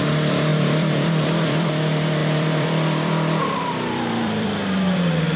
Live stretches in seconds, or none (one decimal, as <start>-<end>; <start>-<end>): 0.0-0.5; 1.8-2.2